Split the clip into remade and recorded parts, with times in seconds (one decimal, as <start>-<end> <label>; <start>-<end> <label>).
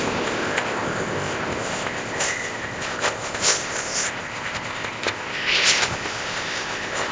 0.0-7.1 remade